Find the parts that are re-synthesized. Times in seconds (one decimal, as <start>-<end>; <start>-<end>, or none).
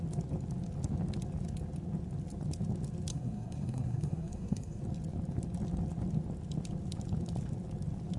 3.1-4.8